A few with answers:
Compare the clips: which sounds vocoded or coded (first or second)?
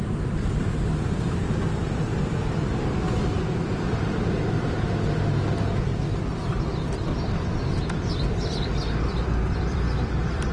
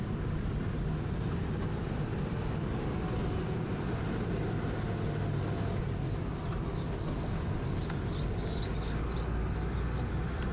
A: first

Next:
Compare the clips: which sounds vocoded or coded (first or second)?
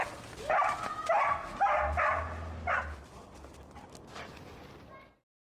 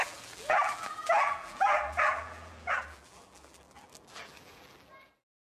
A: second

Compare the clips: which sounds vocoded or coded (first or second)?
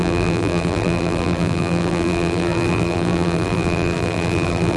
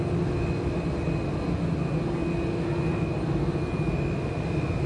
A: first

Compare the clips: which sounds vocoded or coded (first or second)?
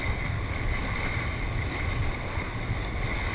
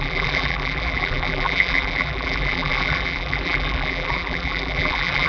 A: second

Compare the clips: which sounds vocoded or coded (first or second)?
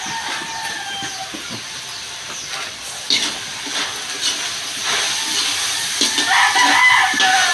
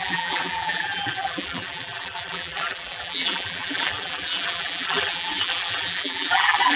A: second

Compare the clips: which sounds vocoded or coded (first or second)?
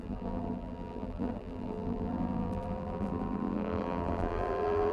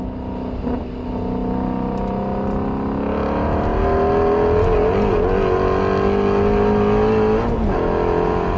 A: first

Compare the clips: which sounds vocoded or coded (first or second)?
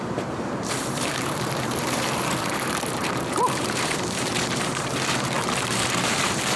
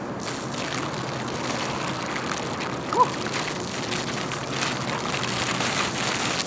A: first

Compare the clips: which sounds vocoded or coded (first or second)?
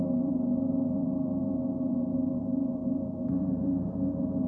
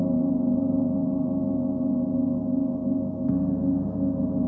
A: first